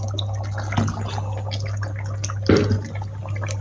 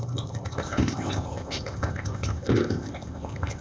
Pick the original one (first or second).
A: first